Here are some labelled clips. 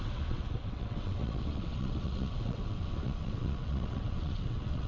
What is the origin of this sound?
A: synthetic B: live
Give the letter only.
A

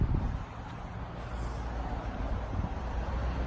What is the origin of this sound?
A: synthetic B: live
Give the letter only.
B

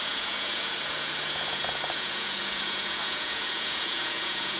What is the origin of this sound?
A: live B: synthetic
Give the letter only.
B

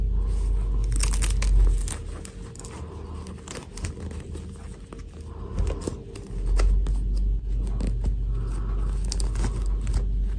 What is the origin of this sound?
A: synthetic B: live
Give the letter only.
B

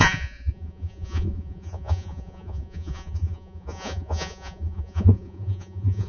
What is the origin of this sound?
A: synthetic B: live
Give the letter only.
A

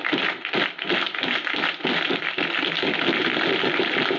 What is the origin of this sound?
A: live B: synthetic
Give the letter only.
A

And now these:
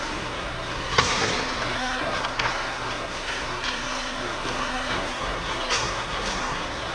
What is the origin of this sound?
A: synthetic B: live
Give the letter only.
A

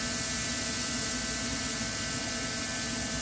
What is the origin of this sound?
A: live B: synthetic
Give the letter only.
A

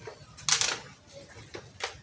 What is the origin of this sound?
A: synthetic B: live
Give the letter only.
B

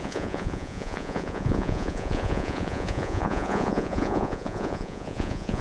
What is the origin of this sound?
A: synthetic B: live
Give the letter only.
A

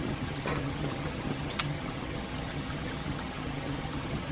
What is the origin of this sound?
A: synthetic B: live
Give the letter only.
A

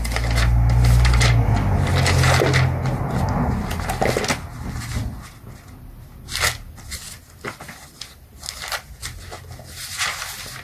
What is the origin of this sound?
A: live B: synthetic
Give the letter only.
A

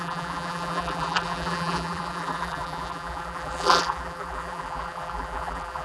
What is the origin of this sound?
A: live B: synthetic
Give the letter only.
B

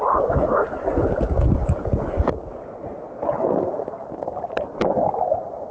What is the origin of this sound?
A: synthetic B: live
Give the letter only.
B